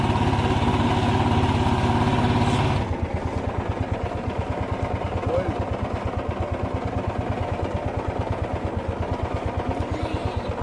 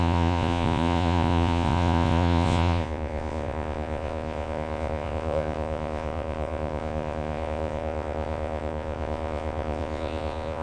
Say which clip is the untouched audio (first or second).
first